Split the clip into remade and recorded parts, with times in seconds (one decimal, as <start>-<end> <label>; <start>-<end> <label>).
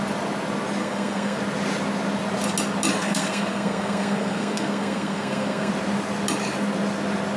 0.0-0.8 recorded; 0.8-1.4 remade; 1.4-3.0 recorded; 3.0-5.7 remade; 5.7-7.4 recorded